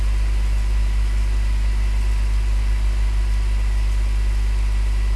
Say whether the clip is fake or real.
real